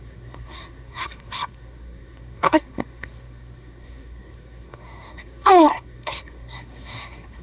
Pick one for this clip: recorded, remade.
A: remade